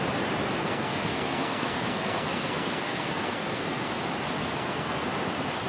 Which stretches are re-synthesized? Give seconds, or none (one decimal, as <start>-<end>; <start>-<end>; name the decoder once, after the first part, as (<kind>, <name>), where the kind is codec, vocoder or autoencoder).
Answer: 0.6-4.0 (codec, SNAC); 4.4-5.1